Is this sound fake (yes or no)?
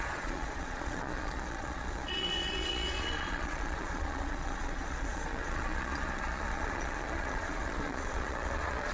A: yes